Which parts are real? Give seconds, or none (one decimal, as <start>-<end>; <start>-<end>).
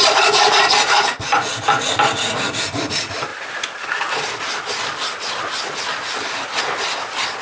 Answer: 0.0-7.4